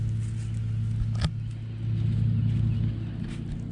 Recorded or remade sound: recorded